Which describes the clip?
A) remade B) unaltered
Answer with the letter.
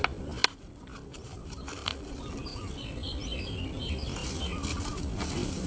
B